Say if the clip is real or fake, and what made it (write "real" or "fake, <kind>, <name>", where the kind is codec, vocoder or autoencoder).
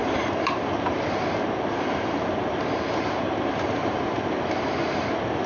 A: fake, vocoder, BigVGAN v2